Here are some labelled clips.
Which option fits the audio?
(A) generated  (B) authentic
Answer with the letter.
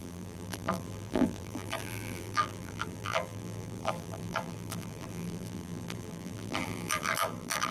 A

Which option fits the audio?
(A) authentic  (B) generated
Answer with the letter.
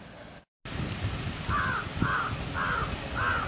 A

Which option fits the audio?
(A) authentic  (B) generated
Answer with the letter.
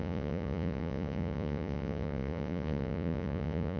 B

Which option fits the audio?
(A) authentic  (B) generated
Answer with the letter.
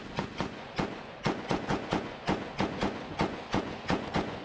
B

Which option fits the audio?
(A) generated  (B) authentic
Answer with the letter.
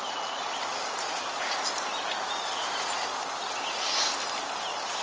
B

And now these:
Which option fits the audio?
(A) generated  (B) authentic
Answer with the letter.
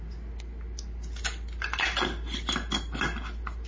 B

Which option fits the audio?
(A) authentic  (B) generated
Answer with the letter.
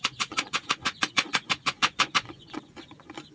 B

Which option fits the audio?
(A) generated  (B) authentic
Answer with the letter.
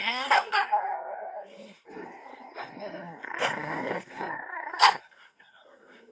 A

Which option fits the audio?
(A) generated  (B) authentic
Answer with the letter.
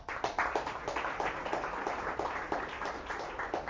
B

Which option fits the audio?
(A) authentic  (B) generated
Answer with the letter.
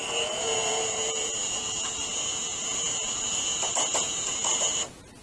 B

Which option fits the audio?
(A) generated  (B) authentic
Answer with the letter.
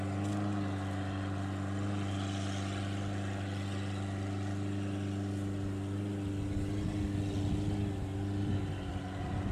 B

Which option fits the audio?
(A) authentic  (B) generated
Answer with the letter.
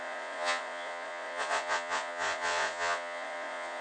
B